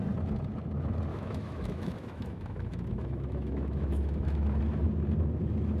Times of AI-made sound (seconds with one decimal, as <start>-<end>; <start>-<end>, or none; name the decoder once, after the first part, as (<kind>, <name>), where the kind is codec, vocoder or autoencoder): 1.1-4.6 (autoencoder, DAC-VAE)